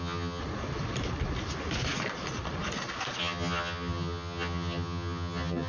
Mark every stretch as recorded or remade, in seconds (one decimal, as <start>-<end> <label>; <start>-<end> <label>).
0.0-0.4 remade; 0.4-3.2 recorded; 3.2-5.7 remade